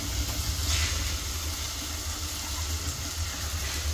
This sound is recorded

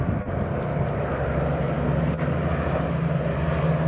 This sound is recorded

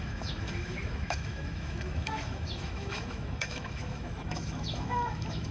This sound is remade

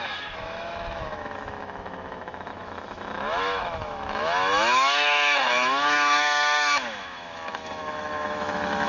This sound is remade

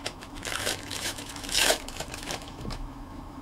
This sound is remade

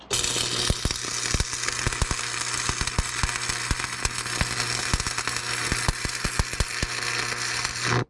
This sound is recorded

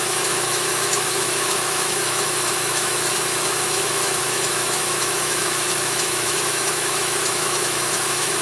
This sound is remade